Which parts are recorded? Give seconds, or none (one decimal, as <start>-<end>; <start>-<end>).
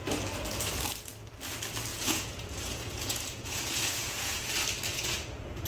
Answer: 0.0-1.9; 4.4-4.9